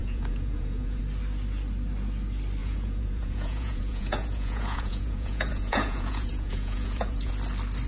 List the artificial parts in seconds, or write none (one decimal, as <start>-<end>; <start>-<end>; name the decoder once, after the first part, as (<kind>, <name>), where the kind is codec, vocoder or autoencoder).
0.0-1.0 (vocoder, Vocos); 2.6-7.3

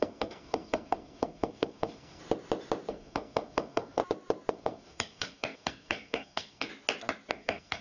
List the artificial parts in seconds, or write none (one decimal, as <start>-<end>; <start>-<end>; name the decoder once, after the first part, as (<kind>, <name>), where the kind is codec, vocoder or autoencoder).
0.0-2.2 (codec, SNAC); 2.9-4.0; 4.5-6.7; 7.3-7.8